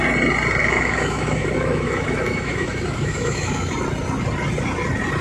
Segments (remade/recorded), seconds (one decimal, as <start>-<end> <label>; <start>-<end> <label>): 0.0-0.6 recorded; 0.6-3.7 remade; 3.7-5.2 recorded

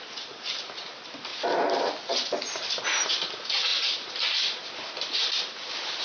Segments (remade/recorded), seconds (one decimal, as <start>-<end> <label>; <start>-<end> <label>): 0.0-3.7 recorded; 3.7-6.0 remade

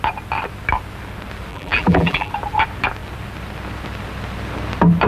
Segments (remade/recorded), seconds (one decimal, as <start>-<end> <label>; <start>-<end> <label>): 0.0-1.5 recorded; 1.5-2.3 remade; 2.3-5.1 recorded

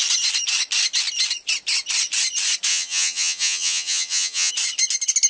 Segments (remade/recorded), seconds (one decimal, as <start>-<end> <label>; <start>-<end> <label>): 0.0-2.7 recorded; 2.7-4.5 remade; 4.5-5.3 recorded

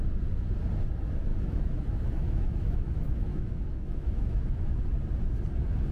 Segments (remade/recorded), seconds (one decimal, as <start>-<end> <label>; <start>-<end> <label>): 0.0-1.3 recorded; 1.3-4.8 remade; 4.8-5.9 recorded

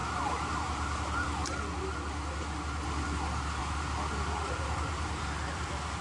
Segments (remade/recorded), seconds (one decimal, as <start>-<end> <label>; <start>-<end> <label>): 0.0-6.0 recorded

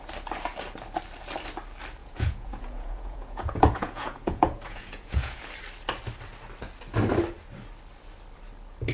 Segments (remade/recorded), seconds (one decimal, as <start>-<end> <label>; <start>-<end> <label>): 0.0-2.0 recorded; 2.0-5.4 remade; 5.4-8.9 recorded